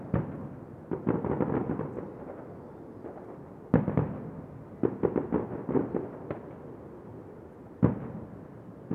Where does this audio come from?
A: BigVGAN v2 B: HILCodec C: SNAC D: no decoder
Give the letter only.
D